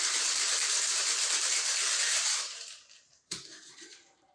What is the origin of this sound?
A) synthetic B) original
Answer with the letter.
A